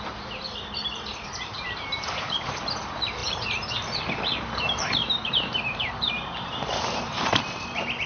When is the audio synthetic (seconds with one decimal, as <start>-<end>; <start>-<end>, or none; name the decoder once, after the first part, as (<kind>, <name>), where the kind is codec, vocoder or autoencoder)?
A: 0.0-8.1 (vocoder, BigVGAN v2)